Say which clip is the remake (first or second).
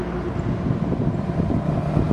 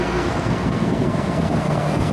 second